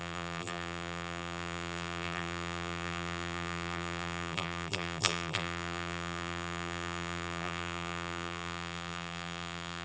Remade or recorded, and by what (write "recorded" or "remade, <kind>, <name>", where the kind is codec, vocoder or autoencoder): remade, vocoder, BigVGAN v2